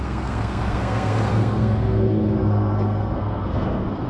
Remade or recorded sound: remade